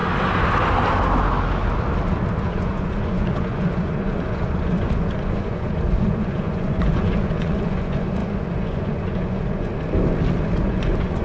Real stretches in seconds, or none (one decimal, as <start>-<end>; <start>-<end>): 0.0-2.4; 9.7-10.6